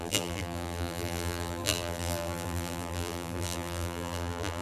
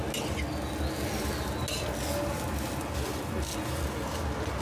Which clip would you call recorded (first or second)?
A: second